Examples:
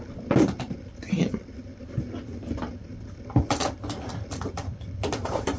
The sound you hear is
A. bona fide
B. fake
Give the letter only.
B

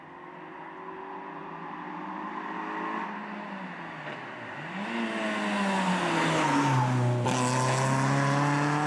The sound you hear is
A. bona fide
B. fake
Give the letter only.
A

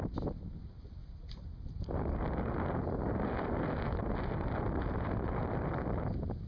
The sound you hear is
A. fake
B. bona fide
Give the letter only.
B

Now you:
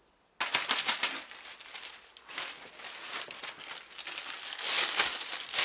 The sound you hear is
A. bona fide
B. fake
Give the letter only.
A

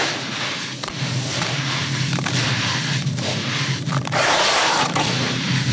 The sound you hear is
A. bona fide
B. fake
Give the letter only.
B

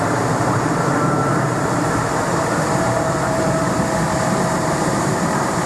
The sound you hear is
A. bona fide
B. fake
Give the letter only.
B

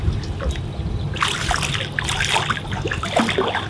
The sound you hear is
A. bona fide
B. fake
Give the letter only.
A